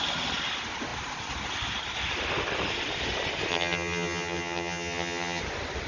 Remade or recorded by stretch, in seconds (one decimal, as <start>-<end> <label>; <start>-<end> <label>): 0.0-3.5 recorded; 3.5-5.4 remade; 5.4-5.9 recorded